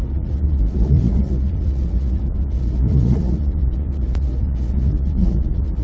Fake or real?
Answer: fake